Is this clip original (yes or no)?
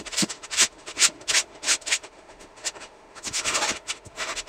no